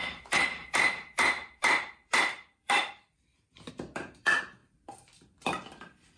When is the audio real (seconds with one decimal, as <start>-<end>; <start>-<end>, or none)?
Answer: none